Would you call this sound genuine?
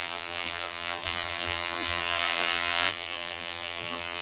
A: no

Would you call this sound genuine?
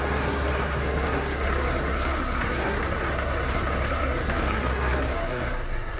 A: no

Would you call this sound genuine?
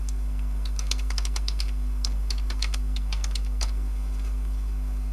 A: no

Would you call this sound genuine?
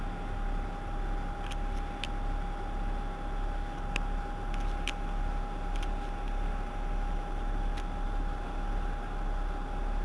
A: yes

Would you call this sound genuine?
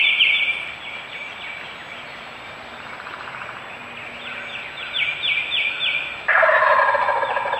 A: yes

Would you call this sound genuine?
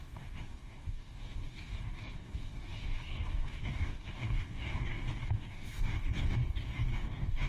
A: no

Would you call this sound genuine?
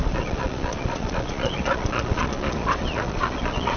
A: no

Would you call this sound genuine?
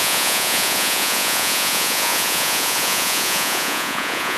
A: no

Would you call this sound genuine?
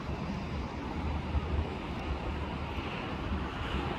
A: no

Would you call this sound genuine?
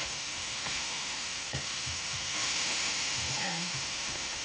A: no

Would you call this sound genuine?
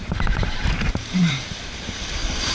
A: no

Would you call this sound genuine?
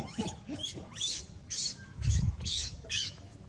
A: no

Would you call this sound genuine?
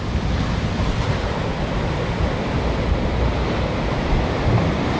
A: yes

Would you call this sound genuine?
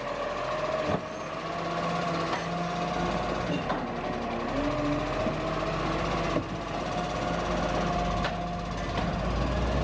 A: yes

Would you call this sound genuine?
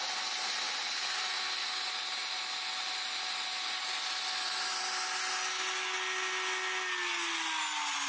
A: yes